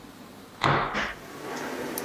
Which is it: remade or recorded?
recorded